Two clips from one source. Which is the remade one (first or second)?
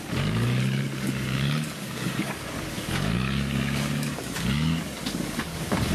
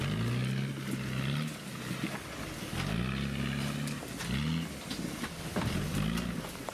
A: first